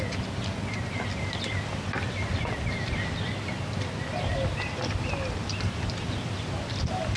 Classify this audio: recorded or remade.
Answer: recorded